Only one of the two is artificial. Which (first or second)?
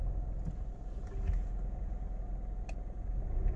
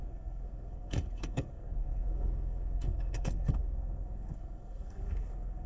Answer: second